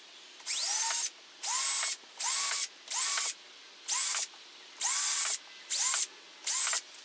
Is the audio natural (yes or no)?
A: yes